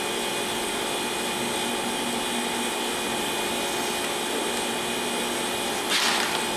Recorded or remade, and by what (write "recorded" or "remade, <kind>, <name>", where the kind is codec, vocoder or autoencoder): recorded